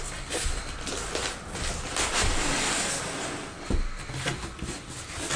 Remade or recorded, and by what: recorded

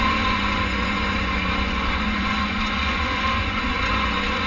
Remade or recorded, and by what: remade, vocoder, Vocos